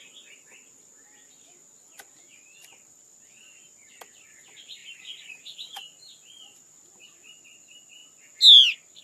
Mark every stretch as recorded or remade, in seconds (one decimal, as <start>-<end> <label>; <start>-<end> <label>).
0.0-9.0 recorded